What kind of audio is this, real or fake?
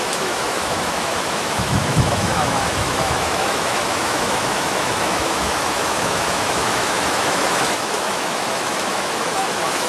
fake